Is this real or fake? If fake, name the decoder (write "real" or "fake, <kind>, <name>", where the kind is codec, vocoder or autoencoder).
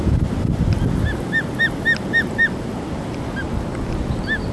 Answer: real